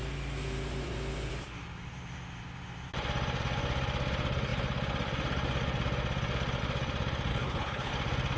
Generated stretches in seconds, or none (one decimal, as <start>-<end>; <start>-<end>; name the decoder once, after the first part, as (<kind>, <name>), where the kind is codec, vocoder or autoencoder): 7.3-7.9 (codec, HILCodec)